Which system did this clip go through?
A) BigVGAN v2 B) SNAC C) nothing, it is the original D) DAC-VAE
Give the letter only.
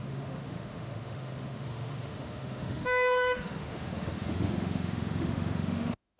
D